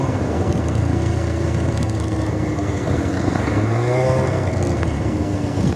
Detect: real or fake fake